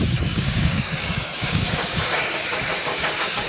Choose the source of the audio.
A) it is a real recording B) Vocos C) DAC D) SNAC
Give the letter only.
C